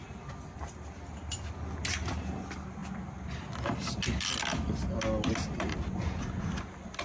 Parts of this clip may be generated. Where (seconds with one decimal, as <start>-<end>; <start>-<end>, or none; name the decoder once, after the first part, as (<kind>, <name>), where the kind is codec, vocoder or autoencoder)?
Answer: none